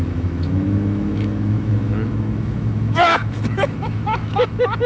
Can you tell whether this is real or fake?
fake